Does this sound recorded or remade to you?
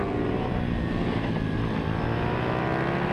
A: recorded